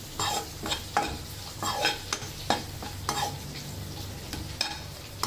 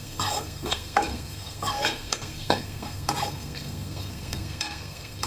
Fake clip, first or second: second